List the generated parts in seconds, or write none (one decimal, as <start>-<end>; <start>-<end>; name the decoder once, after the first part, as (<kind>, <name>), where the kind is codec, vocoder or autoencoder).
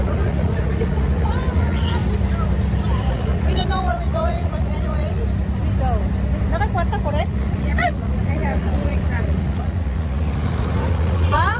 0.0-2.0 (vocoder, Vocos); 3.1-5.2; 7.2-11.6